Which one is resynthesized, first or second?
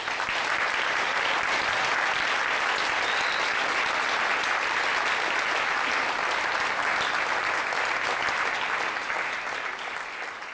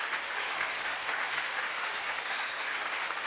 second